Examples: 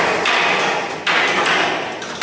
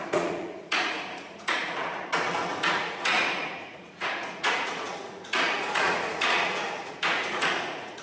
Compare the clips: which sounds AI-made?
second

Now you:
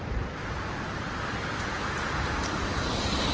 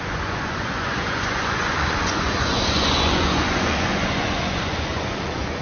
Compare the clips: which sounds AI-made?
second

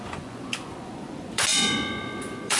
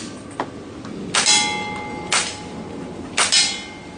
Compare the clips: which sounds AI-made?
first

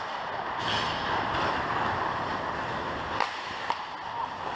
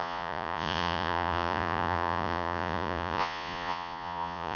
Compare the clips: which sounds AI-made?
second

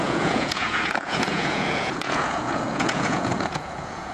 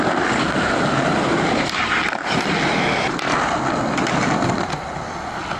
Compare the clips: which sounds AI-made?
first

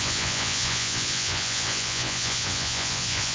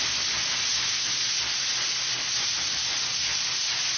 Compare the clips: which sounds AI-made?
first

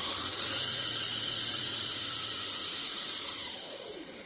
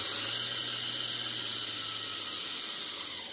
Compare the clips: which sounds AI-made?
first